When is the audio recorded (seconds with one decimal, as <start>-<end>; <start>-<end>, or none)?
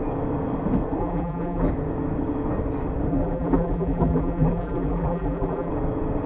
0.0-1.0; 1.7-3.1; 5.7-6.3